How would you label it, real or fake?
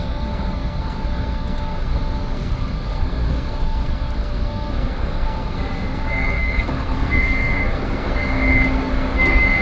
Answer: fake